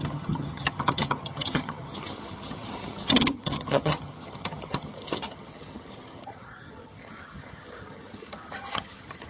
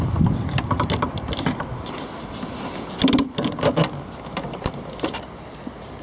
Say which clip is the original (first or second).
second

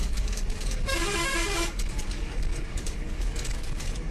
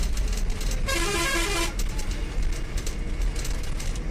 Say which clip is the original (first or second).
second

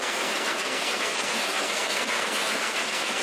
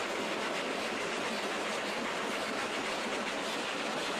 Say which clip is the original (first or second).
second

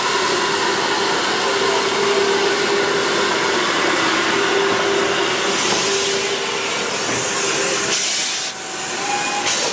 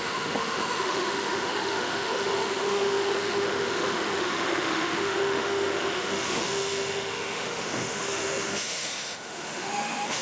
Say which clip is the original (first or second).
first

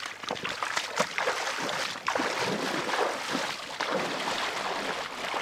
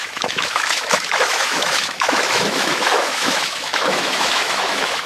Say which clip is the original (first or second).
first